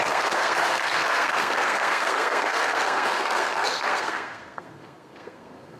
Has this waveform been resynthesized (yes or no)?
yes